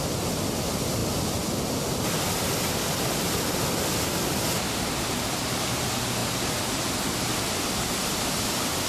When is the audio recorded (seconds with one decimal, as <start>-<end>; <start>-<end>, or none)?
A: 0.0-8.9